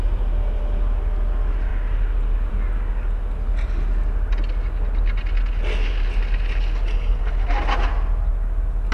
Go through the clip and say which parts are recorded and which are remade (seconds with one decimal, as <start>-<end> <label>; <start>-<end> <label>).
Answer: 0.0-8.9 recorded